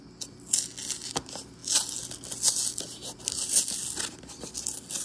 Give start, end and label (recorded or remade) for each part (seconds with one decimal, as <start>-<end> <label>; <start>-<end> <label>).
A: 0.0-5.0 recorded